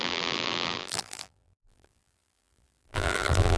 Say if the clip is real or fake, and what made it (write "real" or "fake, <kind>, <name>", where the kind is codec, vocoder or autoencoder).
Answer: fake, vocoder, BigVGAN v2